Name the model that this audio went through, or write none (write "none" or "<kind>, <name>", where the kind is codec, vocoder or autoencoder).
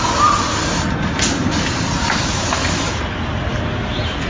none